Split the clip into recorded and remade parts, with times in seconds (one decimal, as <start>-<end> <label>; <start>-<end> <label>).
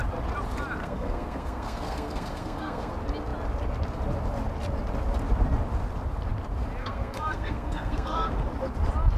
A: 0.0-0.8 recorded; 0.8-2.9 remade; 2.9-6.8 recorded; 6.8-8.3 remade; 8.3-9.2 recorded